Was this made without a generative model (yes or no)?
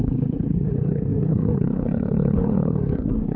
no